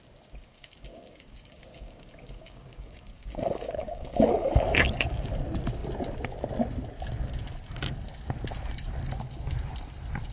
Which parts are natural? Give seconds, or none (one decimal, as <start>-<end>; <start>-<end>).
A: 0.0-0.4; 5.3-10.3